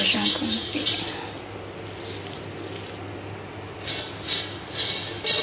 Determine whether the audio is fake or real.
real